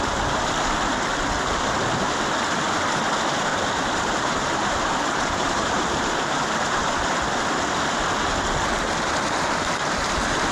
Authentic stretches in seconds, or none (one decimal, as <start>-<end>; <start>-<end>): 0.0-3.5; 6.8-10.5